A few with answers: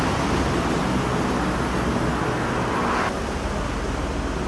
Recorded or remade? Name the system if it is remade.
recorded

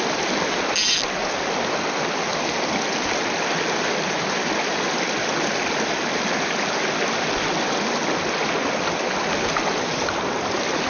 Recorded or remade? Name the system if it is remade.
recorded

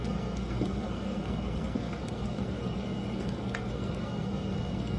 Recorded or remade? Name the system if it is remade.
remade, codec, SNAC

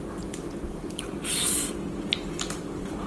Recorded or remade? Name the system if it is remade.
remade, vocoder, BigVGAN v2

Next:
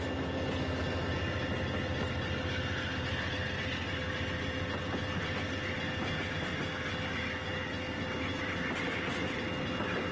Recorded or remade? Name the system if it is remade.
recorded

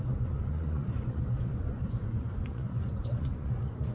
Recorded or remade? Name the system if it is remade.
remade, vocoder, Vocos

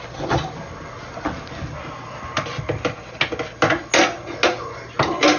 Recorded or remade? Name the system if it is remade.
recorded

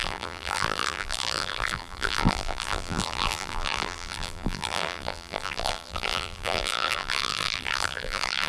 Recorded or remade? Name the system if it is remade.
remade, vocoder, BigVGAN v2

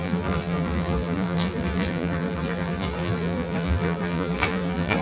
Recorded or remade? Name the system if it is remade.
remade, vocoder, BigVGAN v2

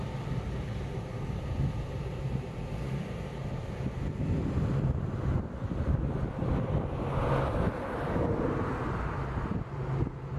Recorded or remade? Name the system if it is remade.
recorded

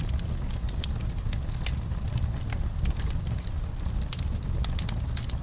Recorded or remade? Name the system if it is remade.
recorded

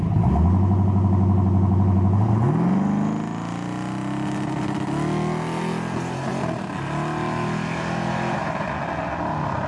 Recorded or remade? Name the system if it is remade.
recorded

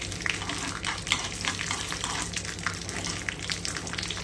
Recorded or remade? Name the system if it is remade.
recorded